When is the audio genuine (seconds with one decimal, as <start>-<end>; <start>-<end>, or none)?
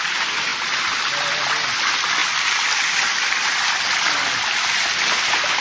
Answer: 0.0-2.2; 4.9-5.6